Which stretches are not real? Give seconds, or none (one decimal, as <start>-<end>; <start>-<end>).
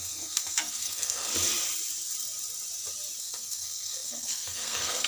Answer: 0.0-1.3; 3.2-5.1